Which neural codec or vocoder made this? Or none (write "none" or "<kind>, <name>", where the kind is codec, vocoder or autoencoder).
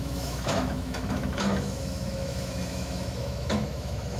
autoencoder, DAC-VAE